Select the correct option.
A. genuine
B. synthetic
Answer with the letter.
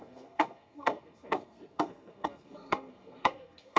B